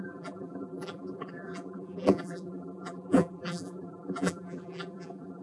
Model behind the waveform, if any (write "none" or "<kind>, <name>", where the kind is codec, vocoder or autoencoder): vocoder, BigVGAN v2